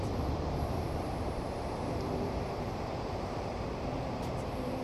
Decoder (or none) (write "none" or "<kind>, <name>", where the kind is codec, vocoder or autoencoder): vocoder, BigVGAN v2